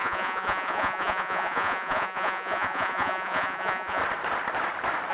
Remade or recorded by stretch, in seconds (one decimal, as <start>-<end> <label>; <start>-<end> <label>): 0.0-4.0 remade; 4.0-5.1 recorded